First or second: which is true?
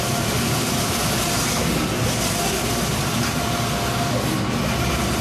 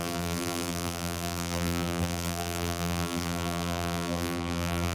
first